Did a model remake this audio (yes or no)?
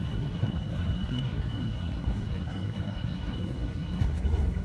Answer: yes